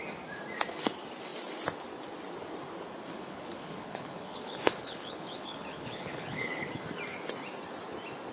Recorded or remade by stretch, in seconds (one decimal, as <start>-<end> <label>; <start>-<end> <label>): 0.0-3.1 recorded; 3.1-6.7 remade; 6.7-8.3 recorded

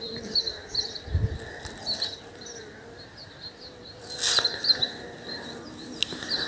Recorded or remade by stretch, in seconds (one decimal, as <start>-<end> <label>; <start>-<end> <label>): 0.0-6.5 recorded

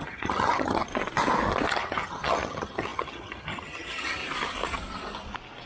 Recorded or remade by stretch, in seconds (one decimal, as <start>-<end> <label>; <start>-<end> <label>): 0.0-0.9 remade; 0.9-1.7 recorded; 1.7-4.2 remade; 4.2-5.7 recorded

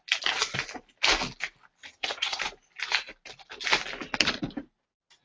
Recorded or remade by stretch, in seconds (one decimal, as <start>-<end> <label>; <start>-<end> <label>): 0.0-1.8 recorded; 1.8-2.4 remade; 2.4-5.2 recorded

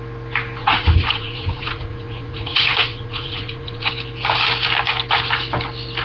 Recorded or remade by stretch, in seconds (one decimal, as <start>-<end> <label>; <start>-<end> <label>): 0.0-0.6 recorded; 0.6-3.9 remade; 3.9-6.0 recorded